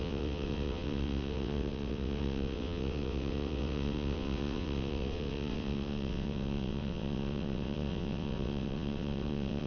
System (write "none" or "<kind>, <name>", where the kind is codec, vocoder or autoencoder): vocoder, WaveNeXt